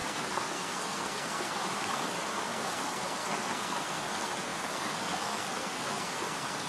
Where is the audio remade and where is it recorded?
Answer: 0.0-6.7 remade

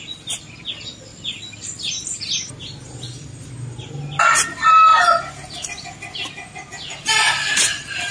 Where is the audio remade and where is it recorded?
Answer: 0.0-8.1 recorded